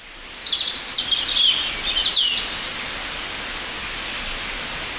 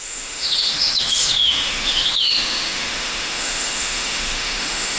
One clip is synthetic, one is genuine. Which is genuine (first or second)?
first